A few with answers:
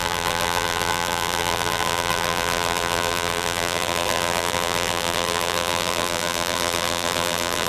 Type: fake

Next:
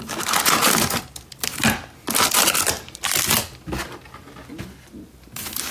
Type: real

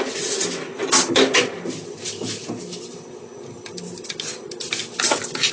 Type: real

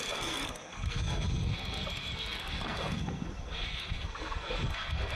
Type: fake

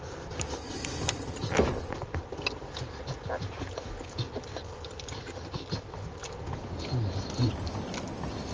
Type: real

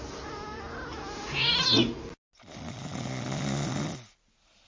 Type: real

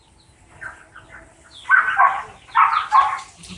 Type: real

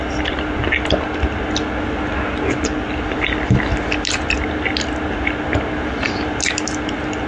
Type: real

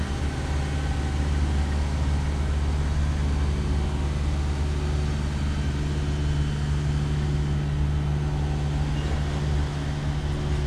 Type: real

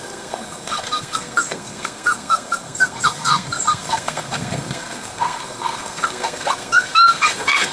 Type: fake